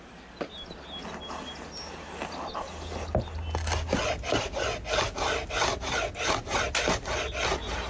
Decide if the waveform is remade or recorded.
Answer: recorded